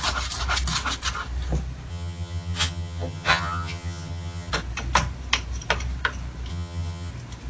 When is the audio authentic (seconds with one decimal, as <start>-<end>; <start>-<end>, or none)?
0.0-1.9; 4.5-6.5; 7.1-7.5